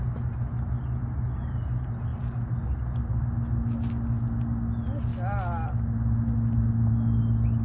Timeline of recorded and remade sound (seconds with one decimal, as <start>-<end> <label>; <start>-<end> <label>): 0.0-7.6 recorded